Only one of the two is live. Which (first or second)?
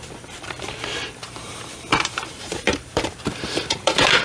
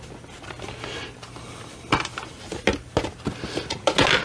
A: second